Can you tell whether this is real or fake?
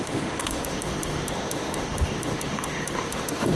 fake